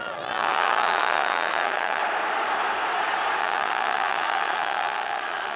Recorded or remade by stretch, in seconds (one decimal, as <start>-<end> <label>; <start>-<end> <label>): 0.0-2.0 remade; 2.0-3.4 recorded; 3.4-5.6 remade